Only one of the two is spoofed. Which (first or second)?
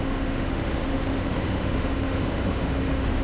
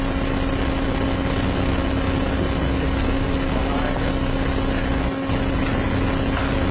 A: first